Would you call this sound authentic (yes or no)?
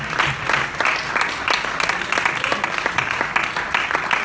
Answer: yes